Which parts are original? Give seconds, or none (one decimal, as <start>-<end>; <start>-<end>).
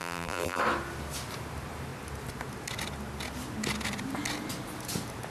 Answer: 0.6-5.3